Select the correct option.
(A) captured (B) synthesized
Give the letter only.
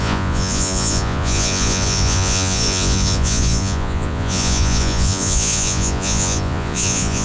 B